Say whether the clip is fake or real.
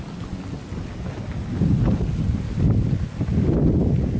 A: real